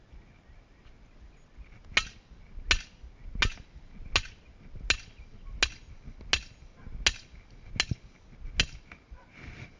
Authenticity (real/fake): real